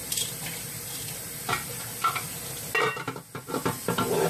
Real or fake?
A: real